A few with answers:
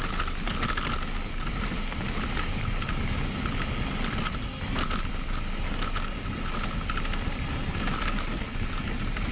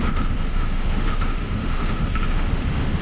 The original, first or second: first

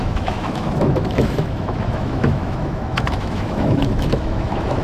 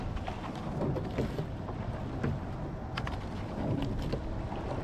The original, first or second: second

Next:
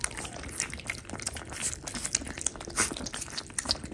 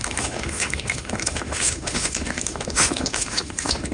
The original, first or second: first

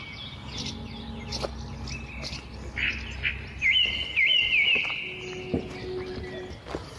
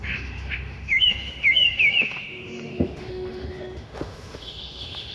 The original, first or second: first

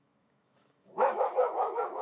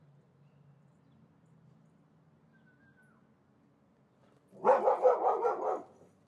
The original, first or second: second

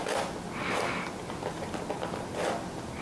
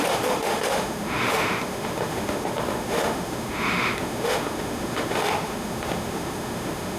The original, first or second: first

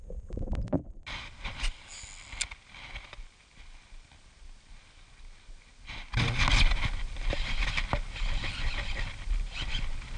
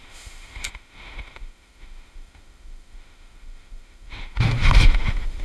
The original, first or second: first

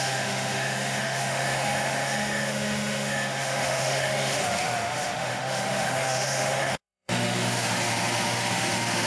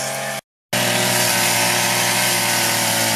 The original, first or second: second